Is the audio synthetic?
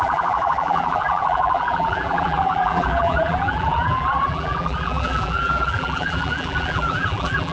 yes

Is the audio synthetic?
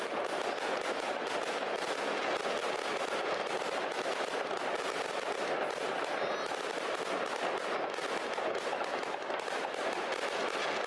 no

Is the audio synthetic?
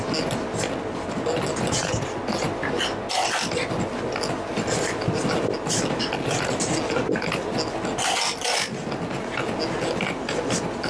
no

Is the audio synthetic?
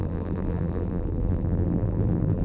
yes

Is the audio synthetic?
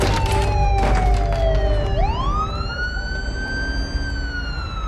no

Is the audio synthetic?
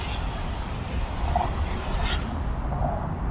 no